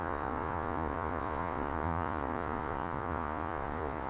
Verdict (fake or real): fake